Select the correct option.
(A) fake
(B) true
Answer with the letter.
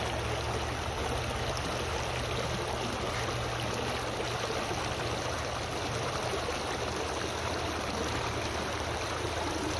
B